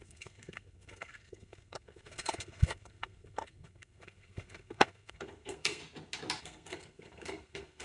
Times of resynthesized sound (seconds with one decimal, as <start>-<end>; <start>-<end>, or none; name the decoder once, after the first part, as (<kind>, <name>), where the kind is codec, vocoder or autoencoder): 0.0-5.8 (codec, SNAC); 6.4-7.8